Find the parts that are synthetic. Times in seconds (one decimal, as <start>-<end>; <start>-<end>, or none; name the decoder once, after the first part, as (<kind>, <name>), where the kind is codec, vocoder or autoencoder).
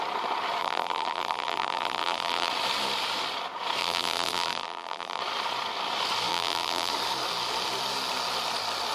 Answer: 0.6-2.5 (vocoder, BigVGAN v2); 3.8-5.2; 6.3-6.9